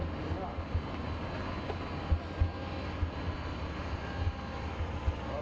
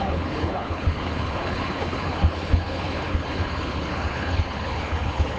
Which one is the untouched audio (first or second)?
first